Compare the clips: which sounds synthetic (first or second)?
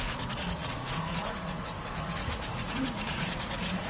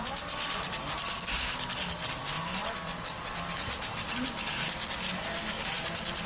first